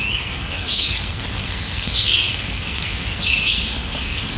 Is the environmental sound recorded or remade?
remade